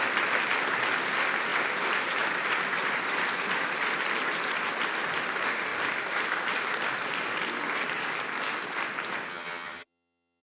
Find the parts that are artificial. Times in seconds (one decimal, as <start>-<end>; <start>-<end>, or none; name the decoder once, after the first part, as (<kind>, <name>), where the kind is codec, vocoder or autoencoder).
9.3-10.4 (vocoder, HiFi-GAN)